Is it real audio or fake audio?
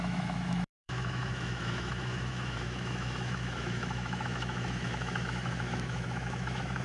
fake